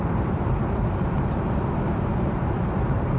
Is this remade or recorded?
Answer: remade